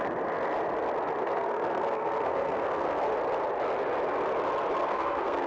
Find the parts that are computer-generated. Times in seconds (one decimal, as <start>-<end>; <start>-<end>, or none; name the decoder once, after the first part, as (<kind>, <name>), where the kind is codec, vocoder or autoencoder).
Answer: 1.2-3.0 (codec, SNAC); 4.8-5.5

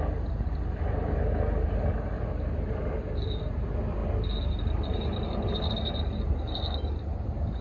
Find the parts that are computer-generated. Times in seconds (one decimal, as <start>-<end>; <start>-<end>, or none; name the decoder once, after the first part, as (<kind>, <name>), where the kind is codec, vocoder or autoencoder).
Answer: none

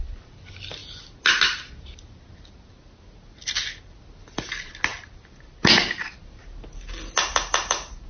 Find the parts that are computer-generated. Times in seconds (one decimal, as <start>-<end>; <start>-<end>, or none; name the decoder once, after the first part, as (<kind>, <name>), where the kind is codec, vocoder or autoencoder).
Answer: none

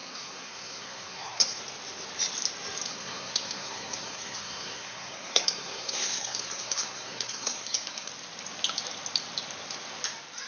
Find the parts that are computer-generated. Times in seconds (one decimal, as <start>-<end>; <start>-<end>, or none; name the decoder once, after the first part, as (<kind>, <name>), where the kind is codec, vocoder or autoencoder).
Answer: 0.0-1.6 (codec, SNAC); 2.9-8.1

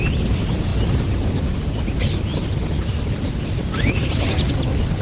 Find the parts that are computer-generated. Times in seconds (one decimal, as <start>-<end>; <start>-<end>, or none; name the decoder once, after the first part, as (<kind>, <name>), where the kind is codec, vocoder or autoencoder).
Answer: none

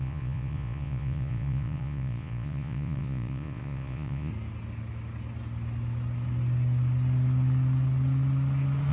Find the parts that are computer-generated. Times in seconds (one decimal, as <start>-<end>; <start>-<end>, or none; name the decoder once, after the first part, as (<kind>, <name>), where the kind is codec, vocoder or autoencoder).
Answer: 0.0-4.3 (vocoder, Vocos)

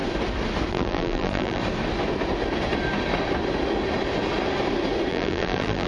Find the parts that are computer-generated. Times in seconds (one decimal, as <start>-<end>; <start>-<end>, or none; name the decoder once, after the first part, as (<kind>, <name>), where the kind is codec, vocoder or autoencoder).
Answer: 0.7-1.6 (vocoder, BigVGAN v2); 5.1-5.9